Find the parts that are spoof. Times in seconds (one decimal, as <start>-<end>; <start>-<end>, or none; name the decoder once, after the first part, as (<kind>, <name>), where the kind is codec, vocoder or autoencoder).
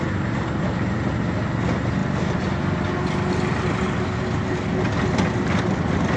none